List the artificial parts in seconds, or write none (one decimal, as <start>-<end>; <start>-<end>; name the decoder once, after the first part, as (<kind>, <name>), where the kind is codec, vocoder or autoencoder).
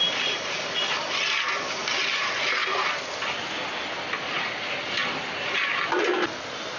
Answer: none